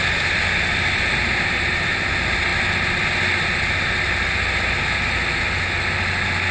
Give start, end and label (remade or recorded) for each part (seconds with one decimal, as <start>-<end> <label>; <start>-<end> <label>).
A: 0.0-6.5 recorded